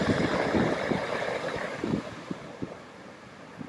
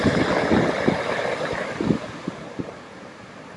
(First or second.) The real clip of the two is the second